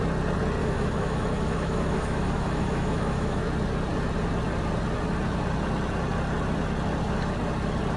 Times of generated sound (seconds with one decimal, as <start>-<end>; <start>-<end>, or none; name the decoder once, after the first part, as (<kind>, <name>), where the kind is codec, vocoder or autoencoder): 0.6-3.4 (autoencoder, DAC-VAE)